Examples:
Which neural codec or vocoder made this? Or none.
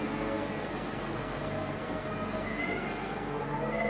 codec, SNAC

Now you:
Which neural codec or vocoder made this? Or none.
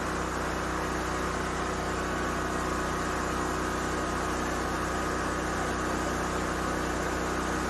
none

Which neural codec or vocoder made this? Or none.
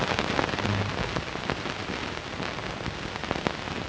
none